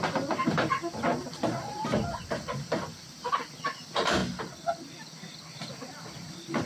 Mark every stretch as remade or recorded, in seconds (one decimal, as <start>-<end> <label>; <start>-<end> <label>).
0.0-1.2 recorded; 1.2-3.3 remade; 3.3-6.7 recorded